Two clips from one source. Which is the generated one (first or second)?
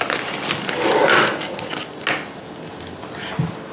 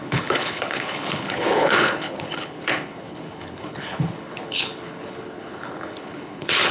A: second